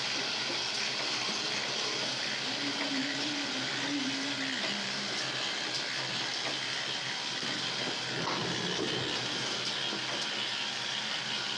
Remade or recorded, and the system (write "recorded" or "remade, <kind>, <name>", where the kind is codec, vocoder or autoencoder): recorded